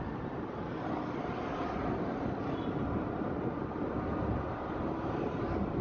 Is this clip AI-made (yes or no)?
no